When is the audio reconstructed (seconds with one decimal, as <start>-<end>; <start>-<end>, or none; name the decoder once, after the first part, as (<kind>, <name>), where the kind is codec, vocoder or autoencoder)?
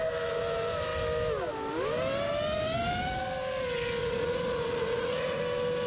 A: 4.0-5.4 (vocoder, Vocos)